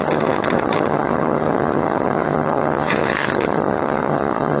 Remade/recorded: remade